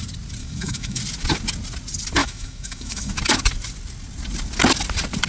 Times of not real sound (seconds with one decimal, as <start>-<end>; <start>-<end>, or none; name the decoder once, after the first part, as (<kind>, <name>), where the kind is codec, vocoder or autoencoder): 0.4-1.0 (autoencoder, DAC-VAE); 2.2-3.1

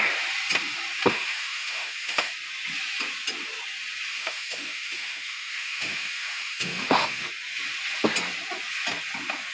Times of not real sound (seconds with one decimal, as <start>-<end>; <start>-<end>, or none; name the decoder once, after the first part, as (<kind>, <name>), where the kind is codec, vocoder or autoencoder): 1.1-2.3 (autoencoder, DAC-VAE); 4.1-7.3

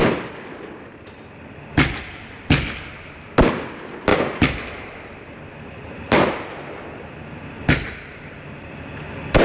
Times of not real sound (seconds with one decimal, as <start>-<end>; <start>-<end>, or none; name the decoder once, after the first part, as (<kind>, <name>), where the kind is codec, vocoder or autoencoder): none

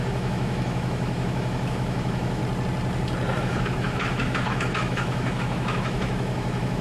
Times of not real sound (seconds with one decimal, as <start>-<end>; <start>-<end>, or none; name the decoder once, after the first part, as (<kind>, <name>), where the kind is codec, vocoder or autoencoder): 0.0-2.4 (autoencoder, DAC-VAE); 3.4-6.8

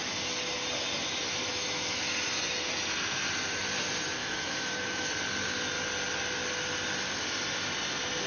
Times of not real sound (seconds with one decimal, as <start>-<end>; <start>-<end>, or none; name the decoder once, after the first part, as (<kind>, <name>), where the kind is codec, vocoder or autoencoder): 1.5-2.0 (autoencoder, DAC-VAE); 4.2-5.1

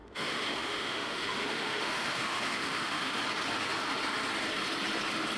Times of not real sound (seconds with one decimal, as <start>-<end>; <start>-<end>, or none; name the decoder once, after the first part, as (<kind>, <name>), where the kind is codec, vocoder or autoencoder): 0.0-3.2 (autoencoder, DAC-VAE)

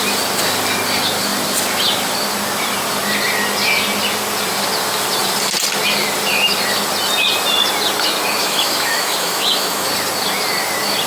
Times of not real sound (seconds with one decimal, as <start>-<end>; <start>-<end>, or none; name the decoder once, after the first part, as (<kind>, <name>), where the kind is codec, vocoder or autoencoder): 8.4-9.9 (autoencoder, DAC-VAE)

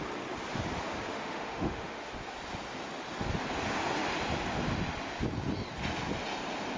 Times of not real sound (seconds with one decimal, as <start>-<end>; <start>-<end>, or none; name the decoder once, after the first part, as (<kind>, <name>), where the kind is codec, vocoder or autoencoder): 1.1-2.1 (autoencoder, DAC-VAE)